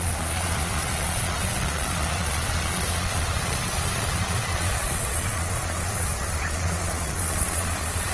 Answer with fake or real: fake